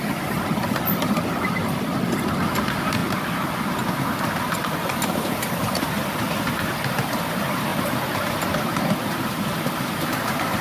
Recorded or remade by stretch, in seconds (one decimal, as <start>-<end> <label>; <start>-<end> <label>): 0.0-10.6 recorded